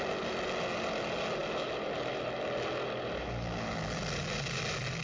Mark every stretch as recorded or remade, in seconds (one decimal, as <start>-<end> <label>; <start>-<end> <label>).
0.0-5.0 recorded